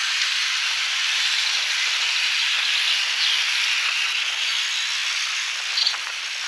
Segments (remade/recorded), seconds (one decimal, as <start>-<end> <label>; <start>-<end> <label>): 0.0-6.5 recorded